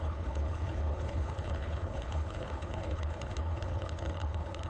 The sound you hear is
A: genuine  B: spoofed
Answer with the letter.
B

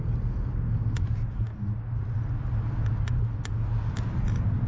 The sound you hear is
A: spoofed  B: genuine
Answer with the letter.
B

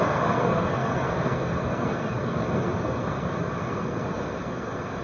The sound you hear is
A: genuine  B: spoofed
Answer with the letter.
B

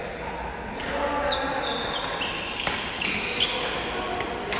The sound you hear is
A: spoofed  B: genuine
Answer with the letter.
B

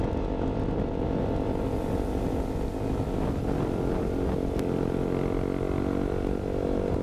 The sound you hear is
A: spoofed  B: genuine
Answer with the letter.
B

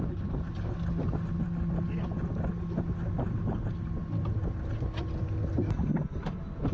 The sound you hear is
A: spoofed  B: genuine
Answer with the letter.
B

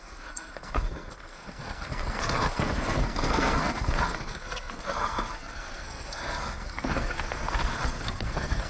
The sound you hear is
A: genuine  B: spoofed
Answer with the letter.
B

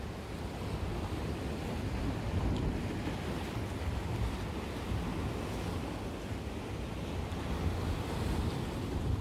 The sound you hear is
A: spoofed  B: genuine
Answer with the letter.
B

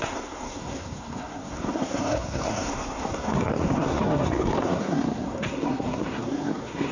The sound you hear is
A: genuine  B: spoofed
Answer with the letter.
B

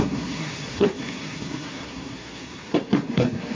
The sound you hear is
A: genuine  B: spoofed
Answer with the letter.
B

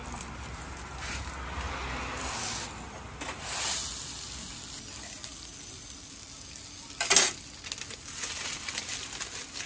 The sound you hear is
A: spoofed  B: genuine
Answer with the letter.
B